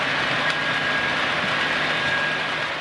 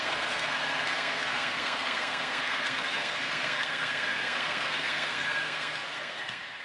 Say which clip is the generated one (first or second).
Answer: second